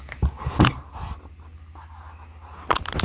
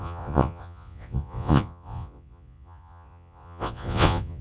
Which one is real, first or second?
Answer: first